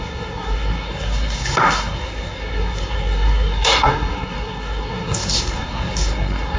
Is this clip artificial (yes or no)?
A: yes